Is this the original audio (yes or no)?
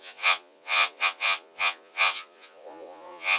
no